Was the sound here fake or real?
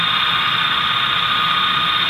real